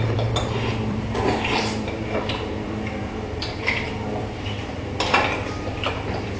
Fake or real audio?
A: fake